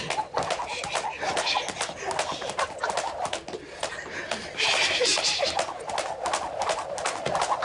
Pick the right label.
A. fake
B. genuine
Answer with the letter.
B